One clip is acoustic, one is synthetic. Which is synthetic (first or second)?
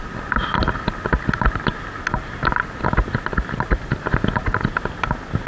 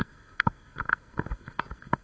second